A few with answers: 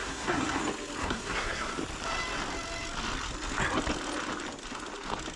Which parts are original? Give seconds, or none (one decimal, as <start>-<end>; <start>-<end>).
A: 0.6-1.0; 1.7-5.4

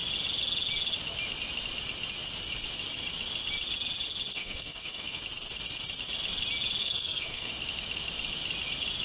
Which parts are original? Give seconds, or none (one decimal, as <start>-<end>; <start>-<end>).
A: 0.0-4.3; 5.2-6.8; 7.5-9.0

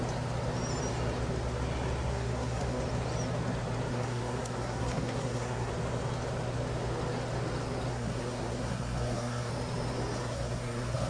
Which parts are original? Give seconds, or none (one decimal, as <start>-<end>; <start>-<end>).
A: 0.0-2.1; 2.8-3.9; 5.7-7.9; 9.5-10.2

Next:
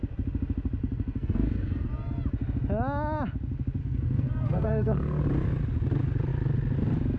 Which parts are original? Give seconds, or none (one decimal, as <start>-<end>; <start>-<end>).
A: 0.0-0.8; 1.9-3.8; 5.2-7.2